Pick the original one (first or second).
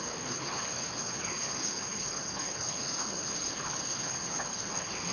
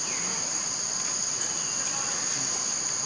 second